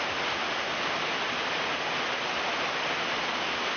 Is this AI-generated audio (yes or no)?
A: no